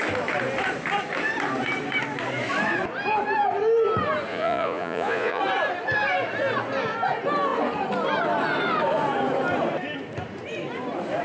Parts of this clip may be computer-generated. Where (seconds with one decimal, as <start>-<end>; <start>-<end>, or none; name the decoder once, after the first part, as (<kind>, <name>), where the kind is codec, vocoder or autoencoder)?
4.3-5.4 (vocoder, Vocos)